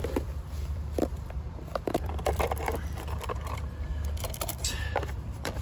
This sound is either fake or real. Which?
fake